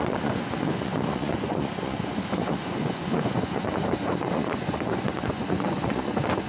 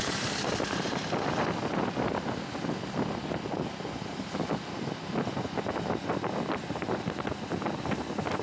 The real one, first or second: second